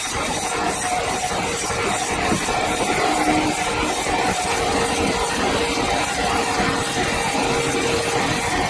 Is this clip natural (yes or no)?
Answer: yes